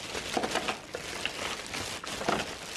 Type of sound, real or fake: real